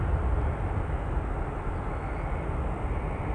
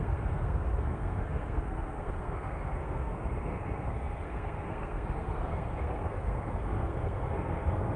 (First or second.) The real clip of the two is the first